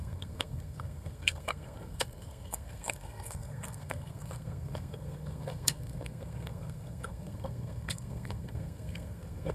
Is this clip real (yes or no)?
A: no